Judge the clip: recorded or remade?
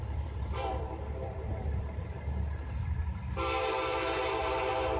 remade